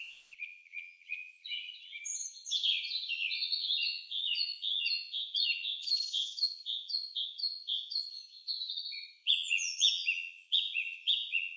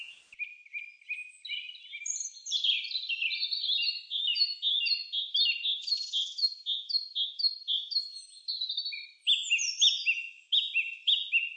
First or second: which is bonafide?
second